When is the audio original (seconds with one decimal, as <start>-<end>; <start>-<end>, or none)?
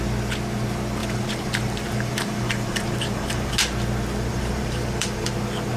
0.0-1.0; 3.5-4.3; 5.3-5.8